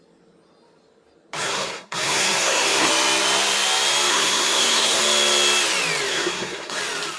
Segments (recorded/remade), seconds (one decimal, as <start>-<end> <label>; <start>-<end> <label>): 0.0-1.4 recorded; 1.4-2.9 remade; 2.9-4.1 recorded; 4.1-5.0 remade; 5.0-6.1 recorded; 6.1-6.8 remade; 6.8-7.2 recorded